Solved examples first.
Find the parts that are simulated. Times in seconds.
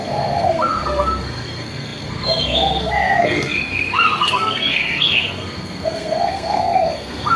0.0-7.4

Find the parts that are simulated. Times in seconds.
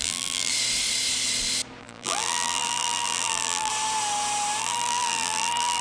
0.0-0.5; 1.8-3.7; 4.6-5.8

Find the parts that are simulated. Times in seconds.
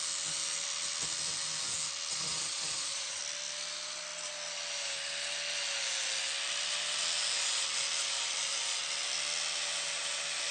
2.1-3.2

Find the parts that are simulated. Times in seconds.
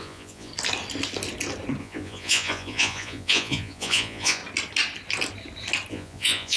0.0-0.5; 1.8-4.4; 5.9-6.6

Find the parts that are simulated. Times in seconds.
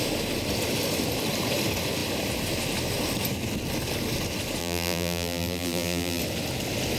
4.6-6.2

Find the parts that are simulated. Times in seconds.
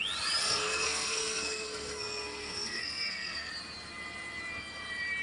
0.4-3.5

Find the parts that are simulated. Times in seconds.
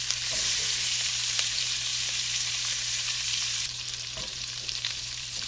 0.0-5.5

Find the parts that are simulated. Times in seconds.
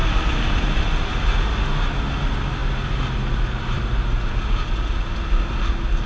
0.0-0.8